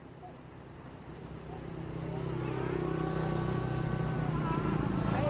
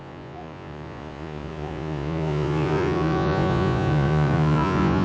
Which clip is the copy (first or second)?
second